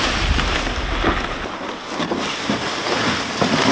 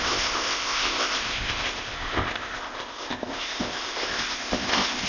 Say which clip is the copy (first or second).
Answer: second